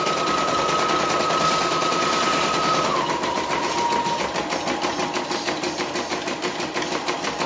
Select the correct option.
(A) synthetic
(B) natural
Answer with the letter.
B